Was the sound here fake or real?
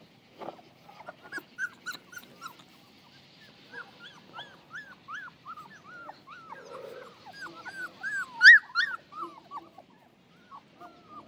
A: real